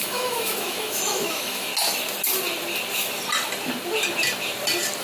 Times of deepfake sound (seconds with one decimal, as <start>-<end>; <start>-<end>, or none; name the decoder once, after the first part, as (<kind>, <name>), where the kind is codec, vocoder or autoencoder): 0.0-1.7 (autoencoder, DAC-VAE)